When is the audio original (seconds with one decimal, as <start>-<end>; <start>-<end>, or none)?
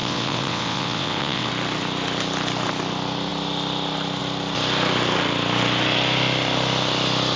1.5-7.4